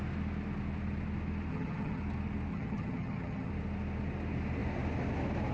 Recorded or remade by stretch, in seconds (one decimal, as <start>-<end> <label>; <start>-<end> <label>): 0.0-1.5 recorded; 1.5-2.0 remade; 2.0-2.5 recorded; 2.5-3.5 remade; 3.5-5.5 recorded